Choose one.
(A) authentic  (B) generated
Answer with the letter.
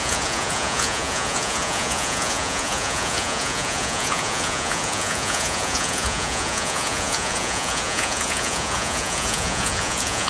B